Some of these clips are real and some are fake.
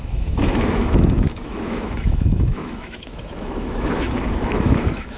fake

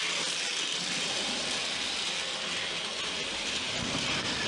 real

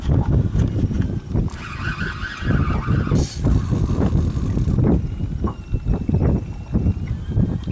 real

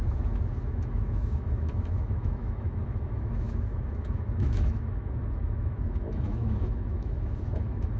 fake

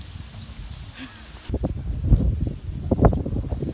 real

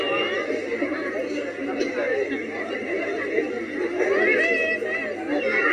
real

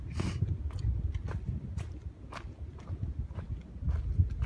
real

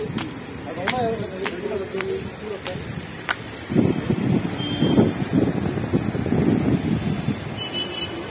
real